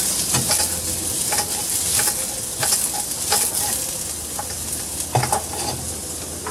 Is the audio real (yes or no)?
yes